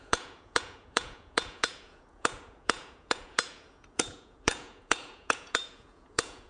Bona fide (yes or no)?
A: no